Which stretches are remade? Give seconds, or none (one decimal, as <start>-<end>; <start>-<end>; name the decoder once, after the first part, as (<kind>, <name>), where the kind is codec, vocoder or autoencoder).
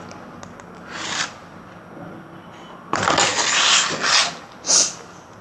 none